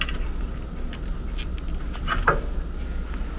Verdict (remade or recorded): recorded